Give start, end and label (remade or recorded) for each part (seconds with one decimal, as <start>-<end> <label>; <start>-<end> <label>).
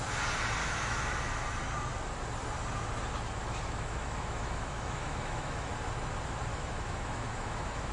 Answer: 0.0-0.6 recorded; 0.6-1.2 remade; 1.2-3.4 recorded; 3.4-5.7 remade; 5.7-6.5 recorded; 6.5-7.9 remade